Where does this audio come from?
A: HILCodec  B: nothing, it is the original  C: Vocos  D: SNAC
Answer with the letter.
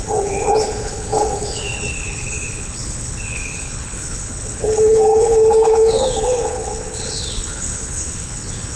A